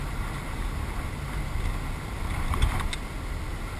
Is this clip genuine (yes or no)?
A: yes